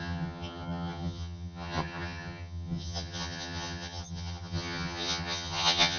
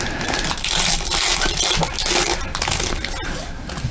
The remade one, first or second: first